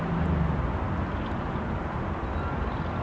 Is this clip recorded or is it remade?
recorded